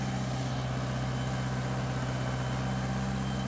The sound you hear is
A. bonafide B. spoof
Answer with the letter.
A